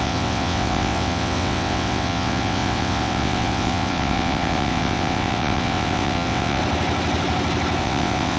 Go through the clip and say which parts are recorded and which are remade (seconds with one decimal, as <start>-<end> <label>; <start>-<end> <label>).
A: 0.0-6.6 remade; 6.6-7.8 recorded; 7.8-8.4 remade